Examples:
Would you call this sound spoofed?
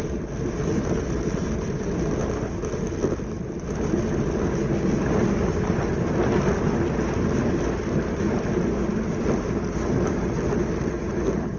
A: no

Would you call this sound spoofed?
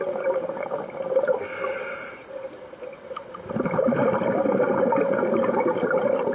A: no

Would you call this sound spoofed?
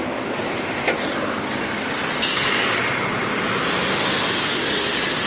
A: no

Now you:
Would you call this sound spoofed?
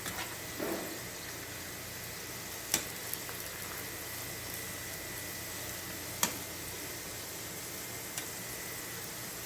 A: no